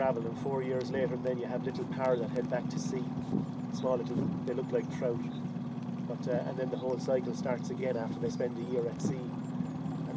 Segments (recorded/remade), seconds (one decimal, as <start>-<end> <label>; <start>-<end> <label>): 0.0-7.8 recorded; 7.8-8.3 remade; 8.3-10.2 recorded